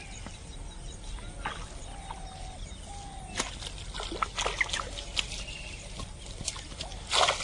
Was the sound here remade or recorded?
recorded